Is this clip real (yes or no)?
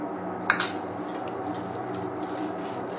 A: yes